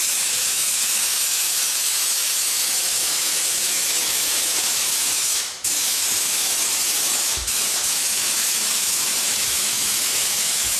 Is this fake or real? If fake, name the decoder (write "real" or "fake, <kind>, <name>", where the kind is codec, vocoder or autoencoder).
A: fake, autoencoder, DAC-VAE